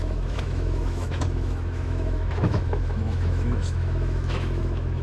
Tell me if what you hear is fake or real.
fake